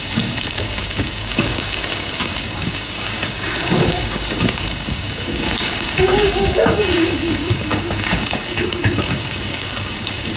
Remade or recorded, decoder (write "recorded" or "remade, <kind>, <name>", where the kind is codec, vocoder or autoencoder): remade, codec, DAC